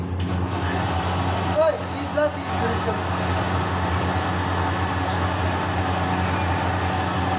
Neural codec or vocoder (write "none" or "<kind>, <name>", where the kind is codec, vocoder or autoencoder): none